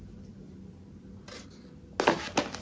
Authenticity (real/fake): real